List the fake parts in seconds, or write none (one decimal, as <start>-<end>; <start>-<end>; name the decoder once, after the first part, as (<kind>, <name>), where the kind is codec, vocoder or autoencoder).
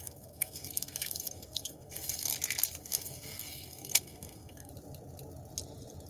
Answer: 0.0-2.3 (codec, SNAC); 2.8-4.7